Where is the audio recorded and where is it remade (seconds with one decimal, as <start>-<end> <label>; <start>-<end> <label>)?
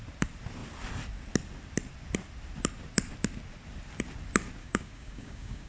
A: 0.0-4.6 recorded; 4.6-5.7 remade